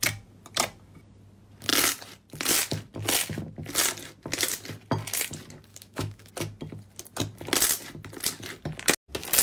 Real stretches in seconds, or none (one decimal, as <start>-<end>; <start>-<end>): 0.0-5.7; 6.3-9.4